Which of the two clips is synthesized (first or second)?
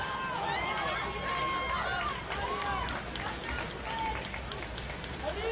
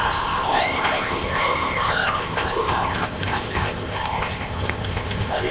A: second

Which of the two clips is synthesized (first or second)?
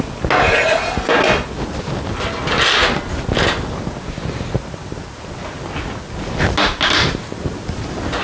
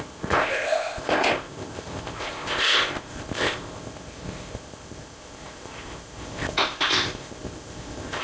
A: second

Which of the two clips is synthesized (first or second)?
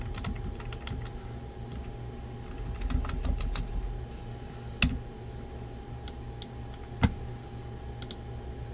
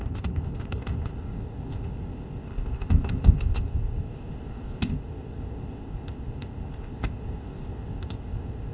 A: second